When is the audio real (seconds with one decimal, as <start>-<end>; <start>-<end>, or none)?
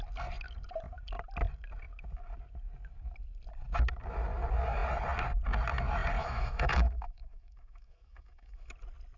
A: 0.0-6.2; 8.7-9.2